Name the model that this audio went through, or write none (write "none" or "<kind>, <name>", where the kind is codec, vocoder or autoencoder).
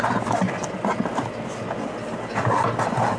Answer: none